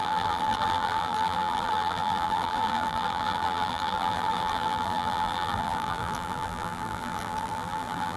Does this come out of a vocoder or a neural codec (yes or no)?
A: yes